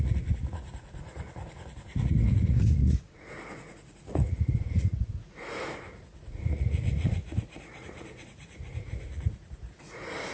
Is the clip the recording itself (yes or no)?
no